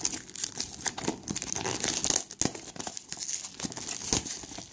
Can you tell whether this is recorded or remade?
recorded